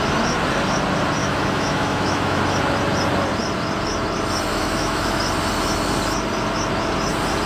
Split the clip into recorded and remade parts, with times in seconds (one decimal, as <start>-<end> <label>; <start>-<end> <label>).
0.0-1.2 recorded; 1.2-2.4 remade; 2.4-4.5 recorded; 4.5-5.1 remade; 5.1-7.5 recorded